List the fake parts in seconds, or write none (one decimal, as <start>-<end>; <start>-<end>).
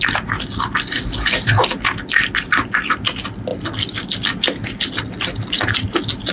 none